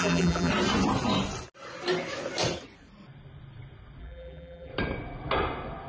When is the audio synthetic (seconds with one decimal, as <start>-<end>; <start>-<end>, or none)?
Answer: 0.0-0.5; 4.0-4.7